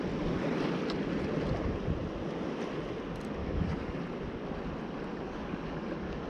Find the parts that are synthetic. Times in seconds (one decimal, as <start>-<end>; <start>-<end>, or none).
3.4-4.0; 5.1-6.3